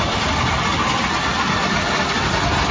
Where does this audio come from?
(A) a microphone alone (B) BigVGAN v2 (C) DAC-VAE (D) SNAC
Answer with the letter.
A